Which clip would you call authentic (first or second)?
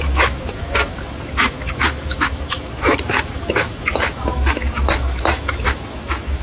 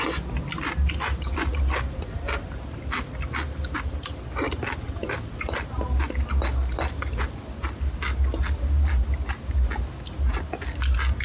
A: second